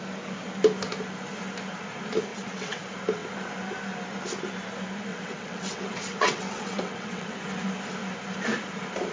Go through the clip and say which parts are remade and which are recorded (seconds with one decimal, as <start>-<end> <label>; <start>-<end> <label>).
0.0-2.3 recorded; 2.3-2.8 remade; 2.8-5.1 recorded; 5.1-7.3 remade; 7.3-9.1 recorded